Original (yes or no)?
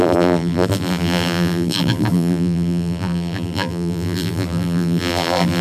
no